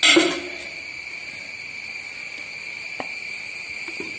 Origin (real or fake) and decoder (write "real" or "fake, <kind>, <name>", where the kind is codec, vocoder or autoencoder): real